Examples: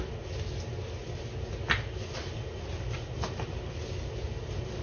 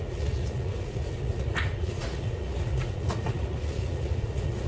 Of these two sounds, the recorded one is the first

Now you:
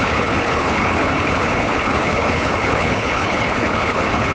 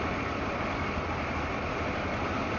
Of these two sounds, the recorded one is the second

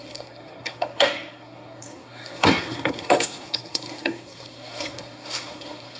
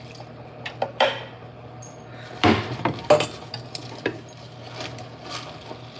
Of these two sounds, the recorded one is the second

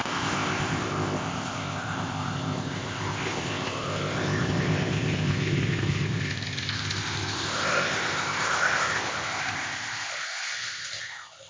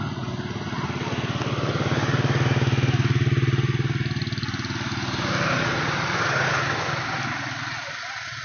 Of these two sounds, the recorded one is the second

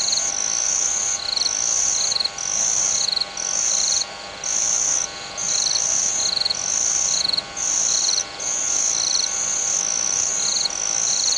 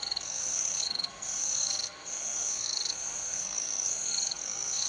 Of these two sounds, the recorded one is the first